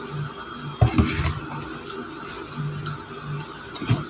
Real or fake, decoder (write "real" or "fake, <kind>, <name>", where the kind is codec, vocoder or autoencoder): real